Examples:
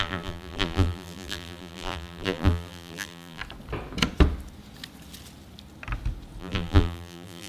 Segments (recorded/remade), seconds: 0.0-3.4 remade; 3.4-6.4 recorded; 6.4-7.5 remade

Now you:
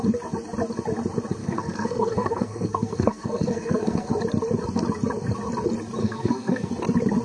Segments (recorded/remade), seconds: 0.0-1.4 recorded; 1.4-4.1 remade; 4.1-6.0 recorded; 6.0-6.7 remade; 6.7-7.2 recorded

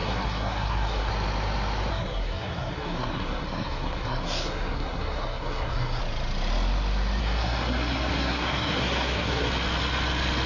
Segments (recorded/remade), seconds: 0.0-1.1 remade; 1.1-1.9 recorded; 1.9-6.0 remade; 6.0-7.2 recorded; 7.2-9.5 remade; 9.5-10.5 recorded

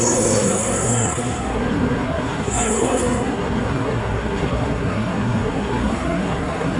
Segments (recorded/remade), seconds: 0.0-6.8 remade

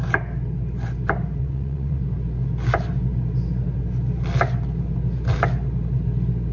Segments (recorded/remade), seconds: 0.0-1.4 recorded; 1.4-2.0 remade; 2.0-6.5 recorded

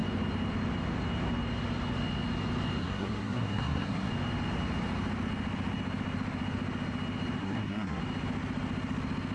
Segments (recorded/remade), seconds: 0.0-2.8 recorded; 2.8-4.1 remade; 4.1-7.4 recorded; 7.4-8.0 remade; 8.0-9.3 recorded